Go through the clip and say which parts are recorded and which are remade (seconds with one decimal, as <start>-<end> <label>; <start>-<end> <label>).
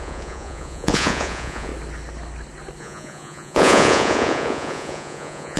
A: 0.0-1.7 remade; 1.7-2.8 recorded; 2.8-5.6 remade